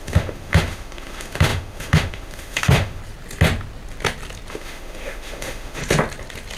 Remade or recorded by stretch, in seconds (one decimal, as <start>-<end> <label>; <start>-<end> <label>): 0.0-3.0 remade; 3.0-4.5 recorded; 4.5-5.8 remade; 5.8-6.6 recorded